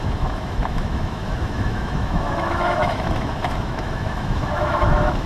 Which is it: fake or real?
fake